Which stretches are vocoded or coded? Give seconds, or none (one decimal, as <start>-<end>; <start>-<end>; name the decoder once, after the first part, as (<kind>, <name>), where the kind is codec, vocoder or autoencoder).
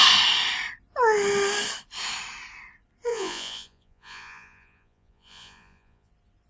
3.1-6.1 (vocoder, Vocos)